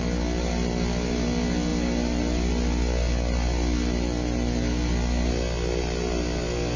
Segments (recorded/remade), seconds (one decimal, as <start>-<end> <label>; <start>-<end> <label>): 0.0-6.8 recorded